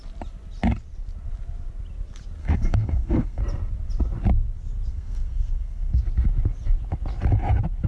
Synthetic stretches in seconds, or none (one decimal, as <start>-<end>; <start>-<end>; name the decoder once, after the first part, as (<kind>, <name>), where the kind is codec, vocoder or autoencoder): 2.4-3.4 (codec, SNAC); 4.9-6.0